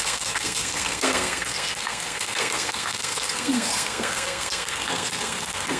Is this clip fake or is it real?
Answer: fake